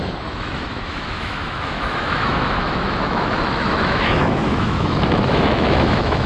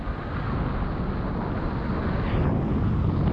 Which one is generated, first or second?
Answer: first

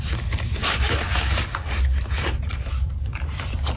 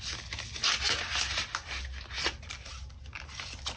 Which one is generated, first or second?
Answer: first